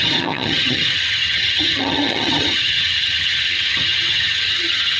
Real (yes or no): no